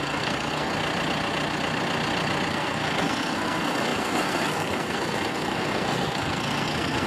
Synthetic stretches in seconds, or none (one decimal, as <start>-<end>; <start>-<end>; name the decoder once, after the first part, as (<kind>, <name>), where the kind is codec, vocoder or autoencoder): 0.0-0.7 (codec, SNAC); 2.5-7.1